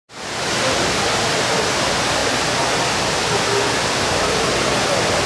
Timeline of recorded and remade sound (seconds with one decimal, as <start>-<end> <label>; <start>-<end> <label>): 0.0-5.3 recorded